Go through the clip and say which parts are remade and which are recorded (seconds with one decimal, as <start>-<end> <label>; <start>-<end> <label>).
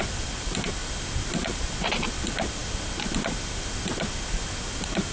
0.0-5.1 recorded